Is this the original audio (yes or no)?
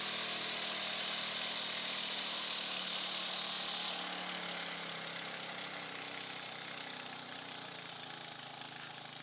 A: yes